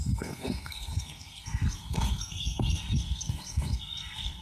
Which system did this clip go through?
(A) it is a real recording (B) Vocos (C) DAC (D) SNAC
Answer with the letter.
D